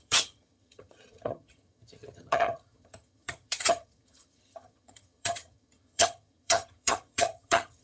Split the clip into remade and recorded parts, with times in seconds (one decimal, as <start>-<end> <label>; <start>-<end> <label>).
0.0-7.8 remade